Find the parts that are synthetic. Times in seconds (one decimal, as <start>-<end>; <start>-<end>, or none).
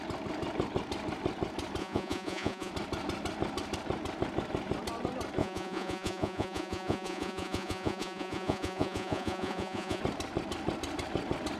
1.8-2.7; 5.4-10.0